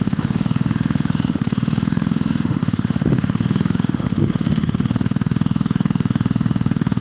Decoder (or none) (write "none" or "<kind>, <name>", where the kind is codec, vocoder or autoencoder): autoencoder, DAC-VAE